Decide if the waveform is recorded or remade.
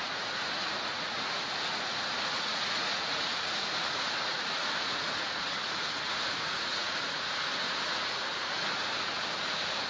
remade